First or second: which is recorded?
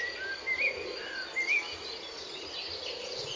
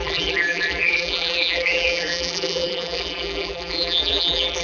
first